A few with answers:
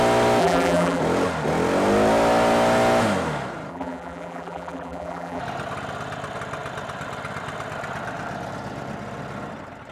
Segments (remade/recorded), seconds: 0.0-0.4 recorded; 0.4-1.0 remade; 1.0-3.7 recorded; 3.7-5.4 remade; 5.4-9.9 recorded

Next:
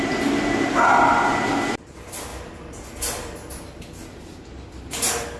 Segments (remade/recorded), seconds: 0.0-5.4 recorded

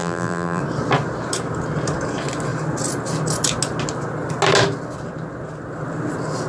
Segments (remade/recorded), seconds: 0.0-0.6 remade; 0.6-6.5 recorded

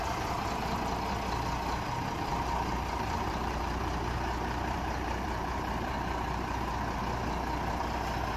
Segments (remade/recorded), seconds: 0.0-2.3 recorded; 2.3-7.0 remade; 7.0-8.4 recorded